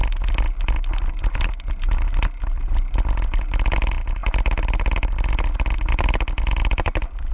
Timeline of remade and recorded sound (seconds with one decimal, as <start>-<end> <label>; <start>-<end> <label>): 0.0-7.3 recorded